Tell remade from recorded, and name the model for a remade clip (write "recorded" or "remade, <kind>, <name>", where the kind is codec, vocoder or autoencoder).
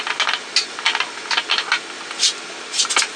recorded